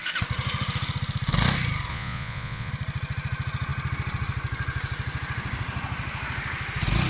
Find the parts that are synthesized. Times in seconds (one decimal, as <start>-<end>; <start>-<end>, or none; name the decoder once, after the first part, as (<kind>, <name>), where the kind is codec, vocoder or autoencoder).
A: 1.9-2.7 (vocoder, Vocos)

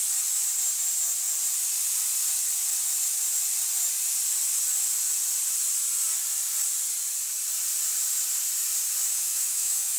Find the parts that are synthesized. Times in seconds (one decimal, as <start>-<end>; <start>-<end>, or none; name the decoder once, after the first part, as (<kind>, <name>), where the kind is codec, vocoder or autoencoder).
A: 9.1-10.0 (autoencoder, DAC-VAE)

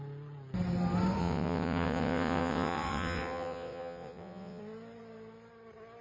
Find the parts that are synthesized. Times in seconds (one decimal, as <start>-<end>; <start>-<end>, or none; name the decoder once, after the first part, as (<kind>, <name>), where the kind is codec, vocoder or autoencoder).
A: 1.2-4.6 (vocoder, WaveNeXt)

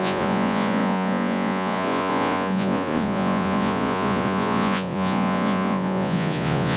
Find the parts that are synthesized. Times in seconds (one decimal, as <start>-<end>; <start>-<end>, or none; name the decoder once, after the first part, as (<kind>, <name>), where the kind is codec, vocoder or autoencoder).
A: 0.0-6.8 (vocoder, Vocos)